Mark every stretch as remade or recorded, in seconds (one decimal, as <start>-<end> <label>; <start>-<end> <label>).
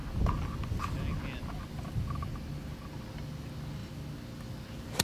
0.0-5.0 recorded